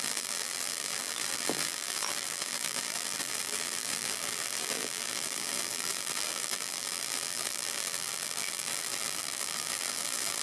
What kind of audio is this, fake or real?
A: fake